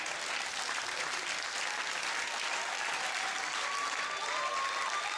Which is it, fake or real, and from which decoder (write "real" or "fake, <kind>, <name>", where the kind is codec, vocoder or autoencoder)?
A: real